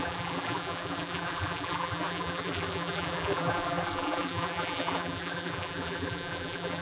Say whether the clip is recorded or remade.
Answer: remade